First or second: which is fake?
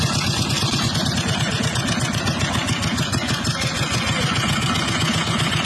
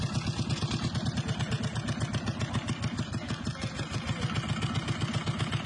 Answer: first